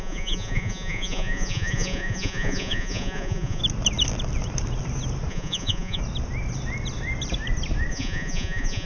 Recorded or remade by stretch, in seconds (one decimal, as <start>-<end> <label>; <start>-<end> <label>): 0.0-3.6 remade; 3.6-5.3 recorded; 5.3-6.0 remade; 6.0-7.9 recorded; 7.9-8.9 remade